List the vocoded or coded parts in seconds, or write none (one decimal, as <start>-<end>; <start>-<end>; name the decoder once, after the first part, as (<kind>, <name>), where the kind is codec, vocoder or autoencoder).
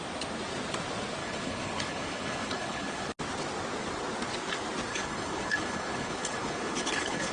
1.2-3.1 (codec, HILCodec); 4.9-7.3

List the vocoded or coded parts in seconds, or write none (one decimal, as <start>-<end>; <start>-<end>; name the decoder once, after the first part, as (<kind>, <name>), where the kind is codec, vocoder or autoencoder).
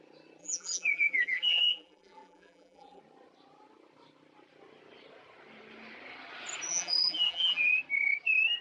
0.4-3.0 (vocoder, BigVGAN v2); 6.7-7.7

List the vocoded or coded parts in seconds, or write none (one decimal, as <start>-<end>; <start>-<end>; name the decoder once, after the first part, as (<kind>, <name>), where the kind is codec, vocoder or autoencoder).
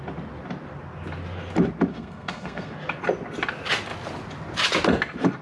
1.9-2.7 (codec, SNAC)